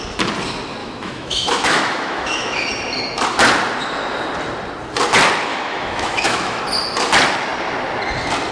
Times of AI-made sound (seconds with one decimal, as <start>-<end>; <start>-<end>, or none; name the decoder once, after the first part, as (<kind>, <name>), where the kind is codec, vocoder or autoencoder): 0.8-2.7 (autoencoder, DAC-VAE); 5.5-6.6